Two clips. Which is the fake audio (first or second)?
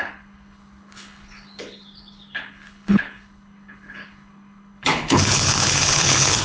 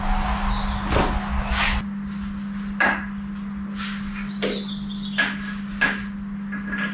first